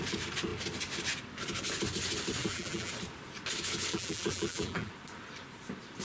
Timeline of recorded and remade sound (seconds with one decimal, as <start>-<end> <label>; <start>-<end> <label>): 0.0-2.4 recorded; 2.4-2.9 remade; 2.9-3.9 recorded; 3.9-4.9 remade; 4.9-6.0 recorded